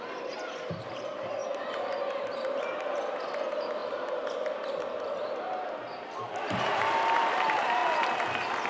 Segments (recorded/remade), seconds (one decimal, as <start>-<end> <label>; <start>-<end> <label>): 0.0-3.8 remade; 3.8-5.1 recorded; 5.1-7.8 remade; 7.8-8.7 recorded